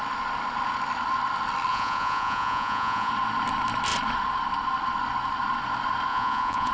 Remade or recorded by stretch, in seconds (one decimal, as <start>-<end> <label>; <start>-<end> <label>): 0.0-1.7 recorded; 1.7-3.1 remade; 3.1-6.1 recorded; 6.1-6.7 remade